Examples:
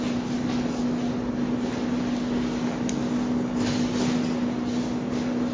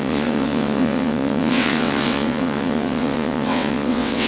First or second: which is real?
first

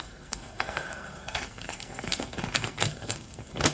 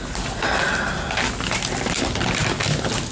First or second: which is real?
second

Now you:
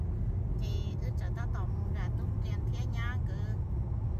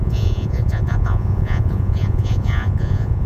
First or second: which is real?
first